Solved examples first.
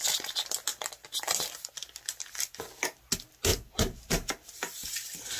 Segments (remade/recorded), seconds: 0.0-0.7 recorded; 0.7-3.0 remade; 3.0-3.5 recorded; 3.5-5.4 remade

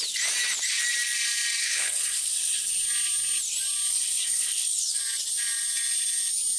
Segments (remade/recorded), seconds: 0.0-1.6 recorded; 1.6-2.7 remade; 2.7-3.9 recorded; 3.9-5.0 remade; 5.0-6.6 recorded